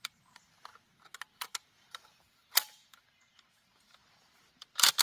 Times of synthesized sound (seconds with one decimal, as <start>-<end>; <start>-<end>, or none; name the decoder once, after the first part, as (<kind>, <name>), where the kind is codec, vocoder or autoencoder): 0.0-0.7 (vocoder, BigVGAN v2); 1.3-5.0